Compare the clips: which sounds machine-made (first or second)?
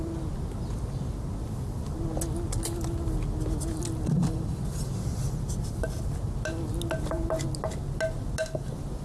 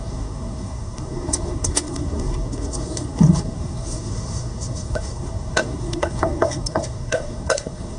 second